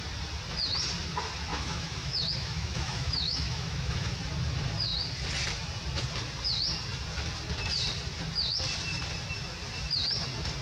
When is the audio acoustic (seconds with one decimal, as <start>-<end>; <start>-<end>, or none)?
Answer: 0.0-1.5; 4.2-10.6